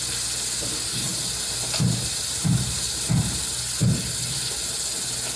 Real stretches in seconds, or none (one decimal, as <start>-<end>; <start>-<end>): 0.0-1.1; 3.4-5.4